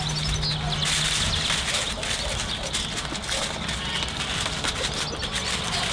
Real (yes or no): yes